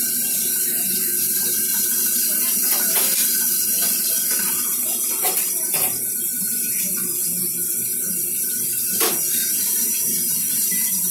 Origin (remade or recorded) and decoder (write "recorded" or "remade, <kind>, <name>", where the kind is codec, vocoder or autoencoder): remade, vocoder, BigVGAN v2